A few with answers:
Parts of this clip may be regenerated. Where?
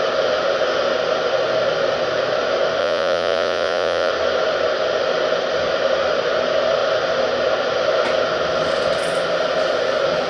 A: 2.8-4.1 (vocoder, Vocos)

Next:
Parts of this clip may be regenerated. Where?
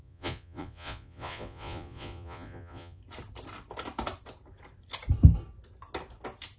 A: 0.0-3.0 (vocoder, Vocos)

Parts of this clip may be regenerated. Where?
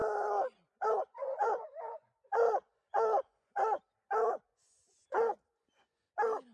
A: 0.0-3.8 (vocoder, Vocos); 4.3-6.1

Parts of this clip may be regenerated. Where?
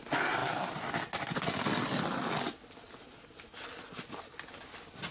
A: none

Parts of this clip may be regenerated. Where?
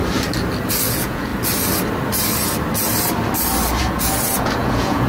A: 0.9-1.3 (vocoder, Vocos); 3.8-5.1